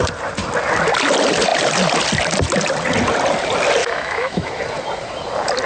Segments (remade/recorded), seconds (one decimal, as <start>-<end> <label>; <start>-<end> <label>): 0.0-3.8 recorded; 3.8-4.5 remade; 4.5-5.7 recorded